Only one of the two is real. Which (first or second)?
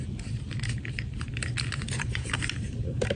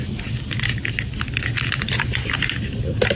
second